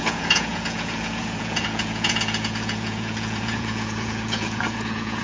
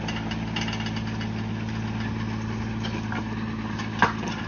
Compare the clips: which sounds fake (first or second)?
first